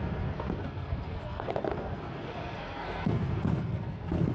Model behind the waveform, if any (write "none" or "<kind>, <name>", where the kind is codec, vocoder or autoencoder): codec, SNAC